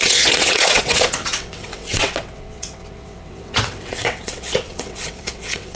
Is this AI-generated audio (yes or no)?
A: yes